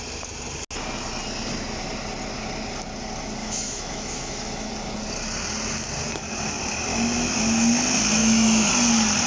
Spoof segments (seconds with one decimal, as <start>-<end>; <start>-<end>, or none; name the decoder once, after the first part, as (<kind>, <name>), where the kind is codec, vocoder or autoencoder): 3.4-4.7 (autoencoder, DAC-VAE); 6.9-7.4; 8.2-8.7